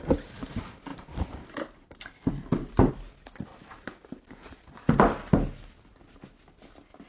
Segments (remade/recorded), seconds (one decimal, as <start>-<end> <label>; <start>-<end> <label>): 0.0-0.9 recorded; 0.9-2.9 remade; 2.9-3.5 recorded; 3.5-4.6 remade; 4.6-7.1 recorded